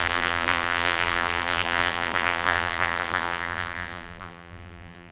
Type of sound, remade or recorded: remade